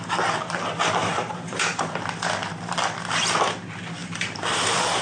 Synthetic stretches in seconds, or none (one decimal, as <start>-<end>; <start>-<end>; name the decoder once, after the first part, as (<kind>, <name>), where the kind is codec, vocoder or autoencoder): 1.0-2.5 (vocoder, BigVGAN v2); 4.0-5.0

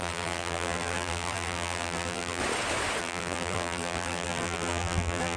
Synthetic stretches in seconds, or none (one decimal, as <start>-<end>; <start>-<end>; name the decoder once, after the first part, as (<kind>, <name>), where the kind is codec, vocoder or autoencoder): 0.0-2.4 (vocoder, BigVGAN v2); 3.0-5.4

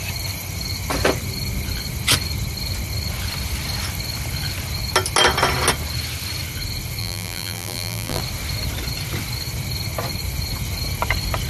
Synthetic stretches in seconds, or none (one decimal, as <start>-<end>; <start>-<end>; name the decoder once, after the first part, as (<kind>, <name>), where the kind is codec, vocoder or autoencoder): 7.0-8.2 (vocoder, BigVGAN v2)

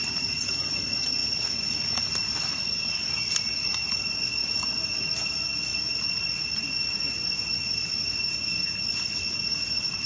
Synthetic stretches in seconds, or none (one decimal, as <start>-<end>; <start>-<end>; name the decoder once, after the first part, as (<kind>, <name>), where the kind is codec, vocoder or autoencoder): none

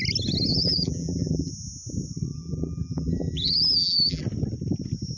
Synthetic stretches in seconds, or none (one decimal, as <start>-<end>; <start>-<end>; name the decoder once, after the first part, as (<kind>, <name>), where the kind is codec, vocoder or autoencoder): 0.5-1.5 (vocoder, BigVGAN v2); 2.3-4.2

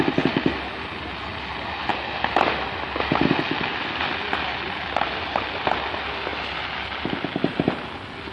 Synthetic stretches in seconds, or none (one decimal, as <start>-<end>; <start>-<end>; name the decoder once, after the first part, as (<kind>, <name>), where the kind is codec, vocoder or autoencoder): none

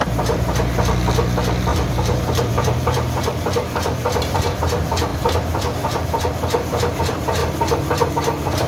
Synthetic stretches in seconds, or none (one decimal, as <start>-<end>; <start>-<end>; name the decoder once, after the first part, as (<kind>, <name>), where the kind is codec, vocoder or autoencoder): 1.7-4.6 (vocoder, BigVGAN v2); 5.1-7.0; 7.4-8.1